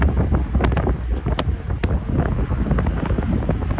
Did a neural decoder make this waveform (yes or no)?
no